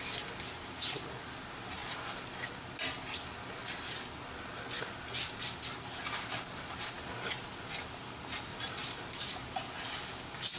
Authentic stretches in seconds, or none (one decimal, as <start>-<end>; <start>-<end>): 0.0-10.6